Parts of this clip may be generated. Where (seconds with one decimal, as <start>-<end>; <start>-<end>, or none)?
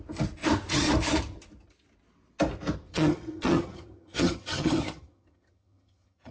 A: 2.9-6.3